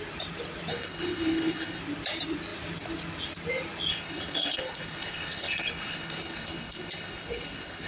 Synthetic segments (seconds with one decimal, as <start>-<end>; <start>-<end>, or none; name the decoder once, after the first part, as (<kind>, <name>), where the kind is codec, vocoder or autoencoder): 0.7-1.8 (codec, HILCodec); 3.9-7.9